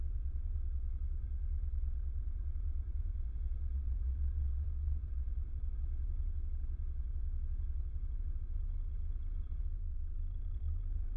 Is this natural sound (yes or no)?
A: no